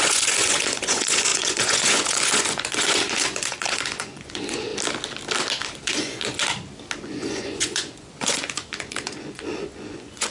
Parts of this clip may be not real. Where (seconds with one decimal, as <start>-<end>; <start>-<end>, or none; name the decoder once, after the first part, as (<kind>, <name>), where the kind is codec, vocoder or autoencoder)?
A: 0.0-4.7 (vocoder, Vocos); 5.8-6.4; 7.0-10.3